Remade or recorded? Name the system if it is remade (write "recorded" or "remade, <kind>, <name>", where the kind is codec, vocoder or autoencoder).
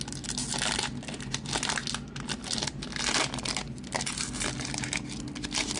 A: recorded